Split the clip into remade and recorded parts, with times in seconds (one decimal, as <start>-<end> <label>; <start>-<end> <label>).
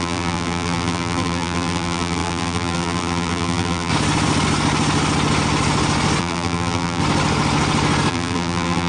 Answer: 0.0-3.9 remade; 3.9-6.2 recorded; 6.2-7.0 remade; 7.0-8.1 recorded; 8.1-8.9 remade